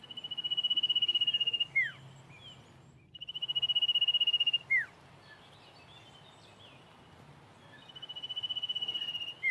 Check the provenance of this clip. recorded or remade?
recorded